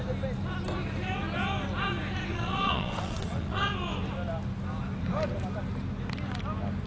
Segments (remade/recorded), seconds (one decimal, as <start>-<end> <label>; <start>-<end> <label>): 0.0-2.3 recorded; 2.3-3.7 remade; 3.7-6.9 recorded

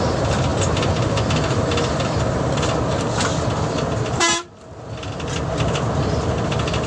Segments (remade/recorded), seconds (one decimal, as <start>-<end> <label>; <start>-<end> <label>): 0.0-6.9 recorded